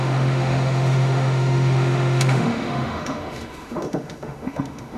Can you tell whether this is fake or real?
fake